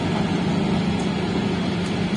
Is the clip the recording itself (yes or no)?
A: yes